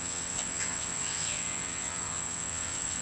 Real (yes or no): no